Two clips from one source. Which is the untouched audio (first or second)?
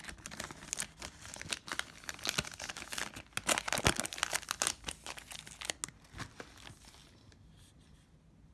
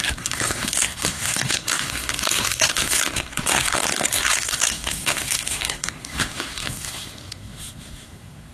first